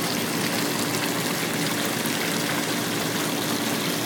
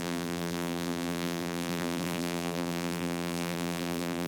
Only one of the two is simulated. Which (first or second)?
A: second